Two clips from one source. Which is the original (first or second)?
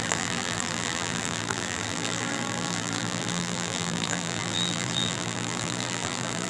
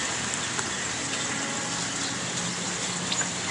second